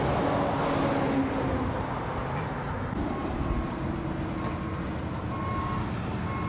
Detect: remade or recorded recorded